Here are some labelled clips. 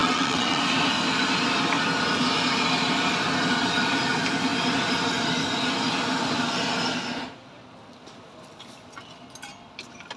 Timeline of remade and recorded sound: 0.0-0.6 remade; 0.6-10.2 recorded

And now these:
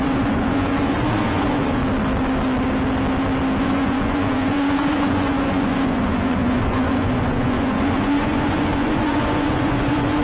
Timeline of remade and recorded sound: 0.0-1.8 remade; 1.8-3.6 recorded; 3.6-10.2 remade

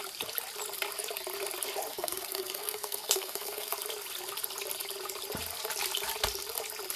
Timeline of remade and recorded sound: 0.0-1.9 recorded; 1.9-3.7 remade; 3.7-7.0 recorded

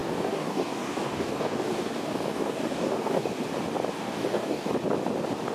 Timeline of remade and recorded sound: 0.0-3.3 remade; 3.3-4.0 recorded; 4.0-4.7 remade; 4.7-5.5 recorded

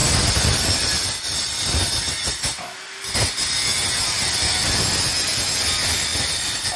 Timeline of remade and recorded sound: 0.0-6.8 recorded